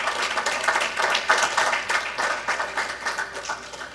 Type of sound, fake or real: real